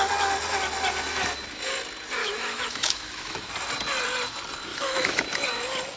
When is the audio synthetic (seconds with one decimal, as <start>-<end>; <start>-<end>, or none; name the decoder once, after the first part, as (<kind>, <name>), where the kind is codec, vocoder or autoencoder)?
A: 2.2-3.5 (autoencoder, DAC-VAE); 4.7-5.2